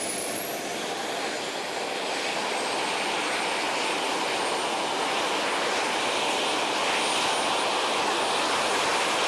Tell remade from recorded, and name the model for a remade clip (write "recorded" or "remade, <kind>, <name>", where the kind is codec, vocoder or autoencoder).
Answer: recorded